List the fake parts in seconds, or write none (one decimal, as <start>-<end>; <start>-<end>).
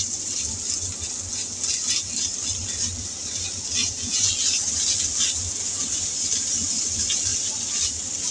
3.8-4.3